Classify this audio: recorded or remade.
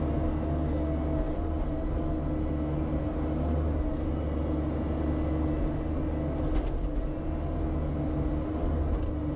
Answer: recorded